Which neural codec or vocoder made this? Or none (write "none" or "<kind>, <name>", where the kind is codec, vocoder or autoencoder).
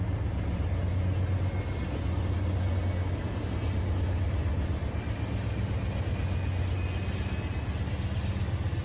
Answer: none